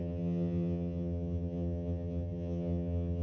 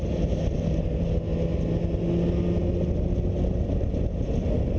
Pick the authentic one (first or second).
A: second